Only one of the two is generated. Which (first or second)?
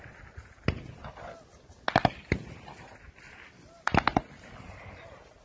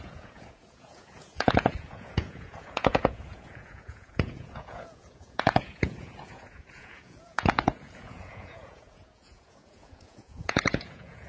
second